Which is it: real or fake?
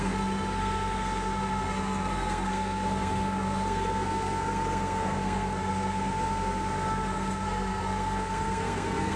fake